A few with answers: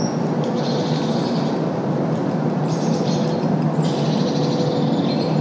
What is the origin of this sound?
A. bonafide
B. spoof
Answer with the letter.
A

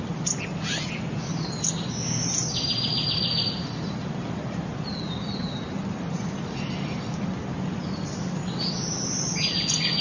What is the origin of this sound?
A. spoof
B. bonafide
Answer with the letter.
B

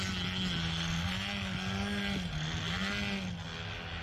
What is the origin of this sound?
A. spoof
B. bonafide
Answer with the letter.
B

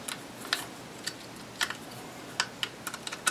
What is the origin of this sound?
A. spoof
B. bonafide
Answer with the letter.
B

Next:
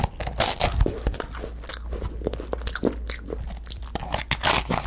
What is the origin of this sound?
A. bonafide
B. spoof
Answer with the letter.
A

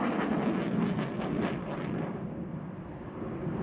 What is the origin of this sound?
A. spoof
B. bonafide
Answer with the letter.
A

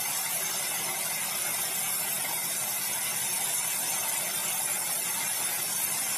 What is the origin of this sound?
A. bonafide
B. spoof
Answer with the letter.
A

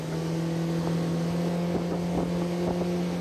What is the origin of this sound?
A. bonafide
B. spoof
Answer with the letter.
A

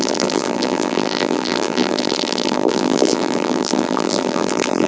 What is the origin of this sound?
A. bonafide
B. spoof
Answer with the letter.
B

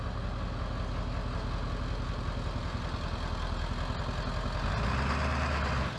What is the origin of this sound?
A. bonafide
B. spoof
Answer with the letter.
A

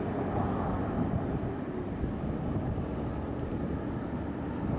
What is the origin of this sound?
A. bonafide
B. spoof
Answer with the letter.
A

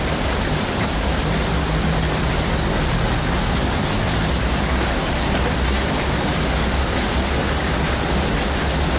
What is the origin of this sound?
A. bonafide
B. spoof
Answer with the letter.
A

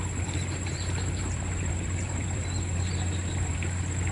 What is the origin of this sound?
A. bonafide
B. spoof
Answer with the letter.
B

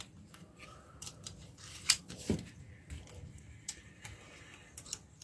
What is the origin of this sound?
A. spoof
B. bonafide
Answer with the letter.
A